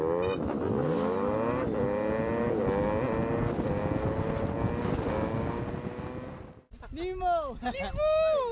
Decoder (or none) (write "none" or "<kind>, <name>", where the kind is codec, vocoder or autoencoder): none